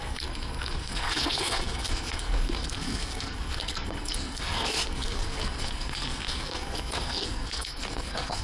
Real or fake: fake